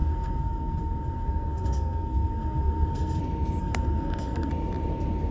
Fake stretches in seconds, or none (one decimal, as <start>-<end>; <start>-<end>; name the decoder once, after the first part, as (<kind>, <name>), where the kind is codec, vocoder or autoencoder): 0.0-3.2 (codec, SNAC); 3.6-4.5